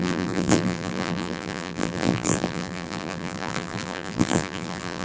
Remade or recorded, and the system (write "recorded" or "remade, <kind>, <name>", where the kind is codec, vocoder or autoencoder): remade, vocoder, BigVGAN v2